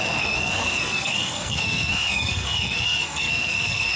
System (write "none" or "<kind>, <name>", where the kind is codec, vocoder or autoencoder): codec, SNAC